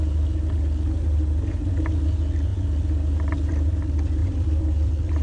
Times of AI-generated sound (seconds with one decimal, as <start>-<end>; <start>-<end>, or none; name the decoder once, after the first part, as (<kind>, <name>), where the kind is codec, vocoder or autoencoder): 4.2-5.2 (vocoder, BigVGAN v2)